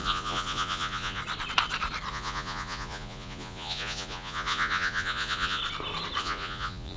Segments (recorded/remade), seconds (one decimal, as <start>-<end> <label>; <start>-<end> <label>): 0.0-1.2 remade; 1.2-2.1 recorded; 2.1-5.6 remade; 5.6-6.2 recorded; 6.2-7.0 remade